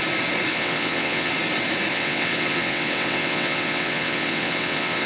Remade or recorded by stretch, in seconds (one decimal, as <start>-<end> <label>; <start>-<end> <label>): 0.0-0.5 recorded; 0.5-1.3 remade; 1.3-1.9 recorded; 1.9-5.1 remade